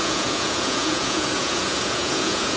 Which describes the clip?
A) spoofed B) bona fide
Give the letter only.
A